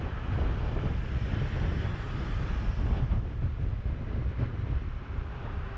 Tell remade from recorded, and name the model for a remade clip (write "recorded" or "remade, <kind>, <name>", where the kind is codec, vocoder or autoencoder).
recorded